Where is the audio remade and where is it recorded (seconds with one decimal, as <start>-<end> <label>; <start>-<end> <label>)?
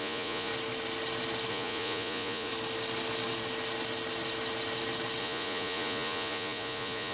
0.0-0.5 remade; 0.5-1.5 recorded; 1.5-2.5 remade; 2.5-5.2 recorded; 5.2-7.1 remade